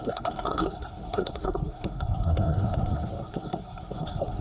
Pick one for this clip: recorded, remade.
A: remade